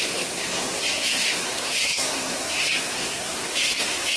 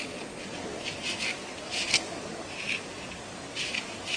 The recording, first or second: second